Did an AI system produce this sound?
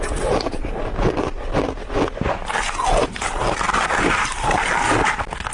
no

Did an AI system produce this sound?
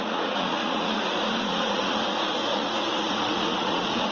yes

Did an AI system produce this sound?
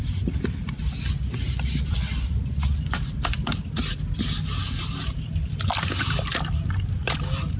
no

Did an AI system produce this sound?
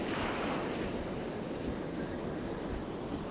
no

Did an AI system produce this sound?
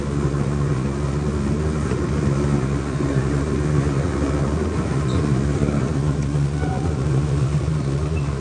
yes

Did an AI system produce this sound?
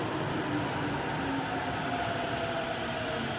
no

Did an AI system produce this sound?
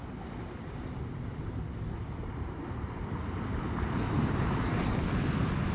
no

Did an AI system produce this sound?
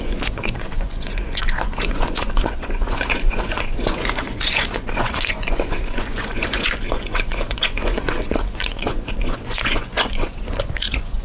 yes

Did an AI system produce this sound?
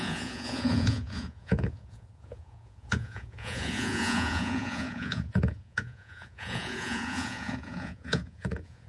yes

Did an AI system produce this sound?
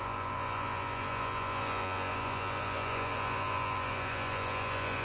yes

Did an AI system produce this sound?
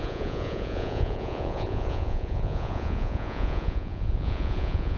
yes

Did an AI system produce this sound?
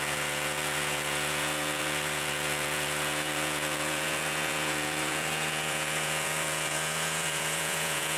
yes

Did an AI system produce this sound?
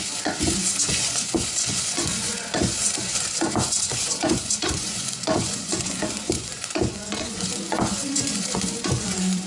yes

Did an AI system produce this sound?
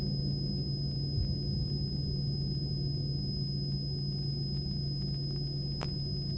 no